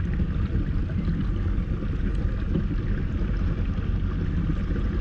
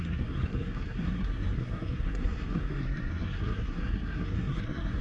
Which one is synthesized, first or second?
second